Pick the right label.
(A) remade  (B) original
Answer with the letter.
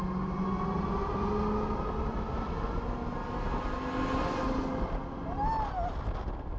B